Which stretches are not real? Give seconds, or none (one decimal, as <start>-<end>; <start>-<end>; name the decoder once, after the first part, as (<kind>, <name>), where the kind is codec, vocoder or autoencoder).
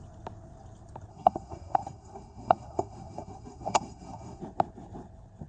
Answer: 1.1-4.4 (codec, SNAC)